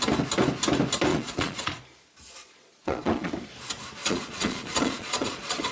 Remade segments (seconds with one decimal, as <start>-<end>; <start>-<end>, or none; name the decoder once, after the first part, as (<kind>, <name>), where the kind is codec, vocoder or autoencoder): 1.1-1.8 (vocoder, Vocos); 2.4-3.3; 4.0-5.7

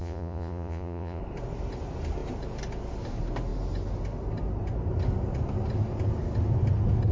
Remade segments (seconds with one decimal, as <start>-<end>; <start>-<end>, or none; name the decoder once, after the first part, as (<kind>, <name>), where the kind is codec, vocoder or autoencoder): 0.0-1.2 (vocoder, Vocos)

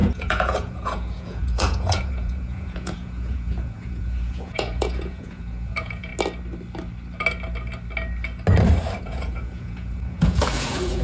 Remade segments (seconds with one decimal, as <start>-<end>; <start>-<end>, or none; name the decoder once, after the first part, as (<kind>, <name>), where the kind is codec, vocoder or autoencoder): 0.0-6.1 (vocoder, Vocos); 9.0-11.0

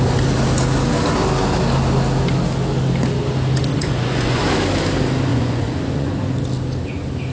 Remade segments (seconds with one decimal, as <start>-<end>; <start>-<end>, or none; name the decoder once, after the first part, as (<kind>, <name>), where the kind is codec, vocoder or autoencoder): 3.7-4.4 (vocoder, Vocos); 5.3-6.3

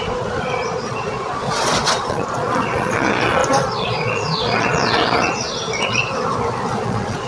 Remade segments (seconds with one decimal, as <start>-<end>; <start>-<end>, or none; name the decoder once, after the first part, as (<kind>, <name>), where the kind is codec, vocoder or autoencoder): 0.0-6.1 (vocoder, Vocos); 6.8-7.3

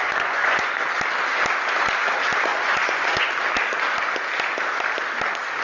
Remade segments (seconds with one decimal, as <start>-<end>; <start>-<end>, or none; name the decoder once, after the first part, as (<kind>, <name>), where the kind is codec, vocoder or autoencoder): 0.0-0.7 (vocoder, Vocos); 2.5-3.3

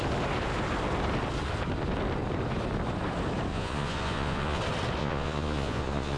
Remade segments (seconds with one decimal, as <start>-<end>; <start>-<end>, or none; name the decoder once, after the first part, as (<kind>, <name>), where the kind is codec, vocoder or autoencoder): 3.5-4.6 (vocoder, Vocos); 5.0-6.2

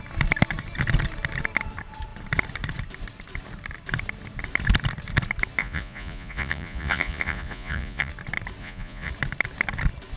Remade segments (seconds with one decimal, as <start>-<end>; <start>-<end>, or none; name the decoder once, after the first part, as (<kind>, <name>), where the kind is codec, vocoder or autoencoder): 5.6-8.1 (vocoder, Vocos); 8.6-9.1